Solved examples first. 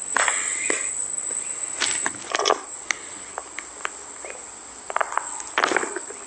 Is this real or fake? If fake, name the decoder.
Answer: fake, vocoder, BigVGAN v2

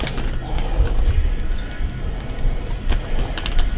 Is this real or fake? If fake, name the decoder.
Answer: real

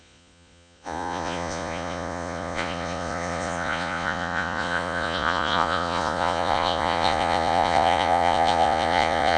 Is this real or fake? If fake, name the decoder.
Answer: fake, vocoder, Vocos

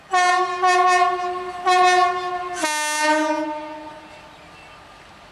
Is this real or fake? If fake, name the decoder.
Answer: real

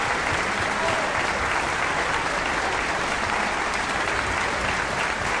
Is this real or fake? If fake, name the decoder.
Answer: real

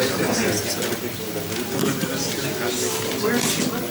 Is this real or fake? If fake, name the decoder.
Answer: real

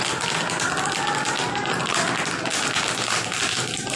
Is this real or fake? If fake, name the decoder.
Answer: real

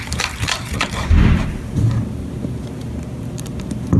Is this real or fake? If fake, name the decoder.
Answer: fake, vocoder, BigVGAN v2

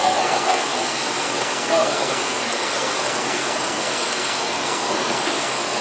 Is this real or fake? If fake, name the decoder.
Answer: fake, codec, SNAC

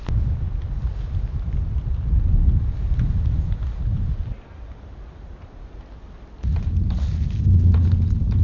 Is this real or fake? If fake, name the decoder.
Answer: real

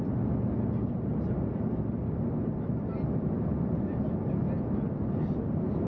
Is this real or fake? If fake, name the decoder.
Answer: real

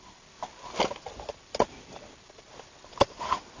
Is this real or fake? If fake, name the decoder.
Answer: real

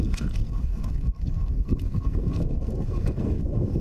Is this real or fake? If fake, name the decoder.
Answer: fake, codec, SNAC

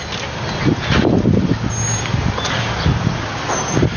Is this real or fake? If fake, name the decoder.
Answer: real